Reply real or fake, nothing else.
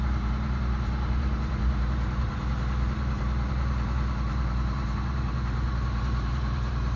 fake